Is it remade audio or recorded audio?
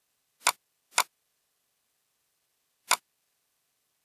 recorded